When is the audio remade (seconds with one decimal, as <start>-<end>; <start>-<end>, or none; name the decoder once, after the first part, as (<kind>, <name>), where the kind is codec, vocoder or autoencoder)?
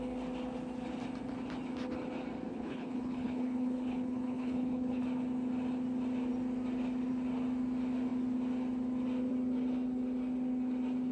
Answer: 2.5-5.0 (codec, HILCodec)